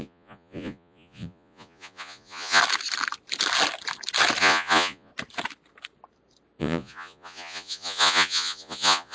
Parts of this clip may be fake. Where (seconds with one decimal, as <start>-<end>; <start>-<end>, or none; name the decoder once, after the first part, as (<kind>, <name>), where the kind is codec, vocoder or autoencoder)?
0.0-2.6 (vocoder, Vocos); 4.4-5.1; 6.6-9.1